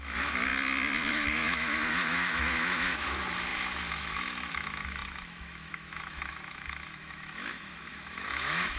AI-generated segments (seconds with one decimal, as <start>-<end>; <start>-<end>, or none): 0.0-0.5; 1.1-8.8